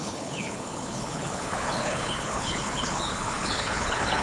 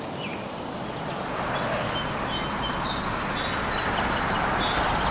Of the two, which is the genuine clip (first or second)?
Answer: second